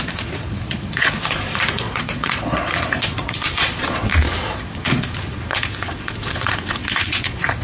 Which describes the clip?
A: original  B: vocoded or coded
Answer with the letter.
B